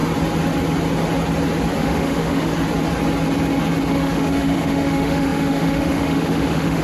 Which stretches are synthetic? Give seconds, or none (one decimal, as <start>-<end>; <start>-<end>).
1.8-2.5; 3.9-6.8